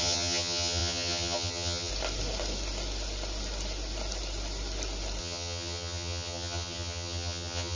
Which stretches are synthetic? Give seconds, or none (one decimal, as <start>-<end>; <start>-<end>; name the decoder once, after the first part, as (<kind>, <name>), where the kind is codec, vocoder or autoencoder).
0.0-1.9 (vocoder, HiFi-GAN); 5.2-7.8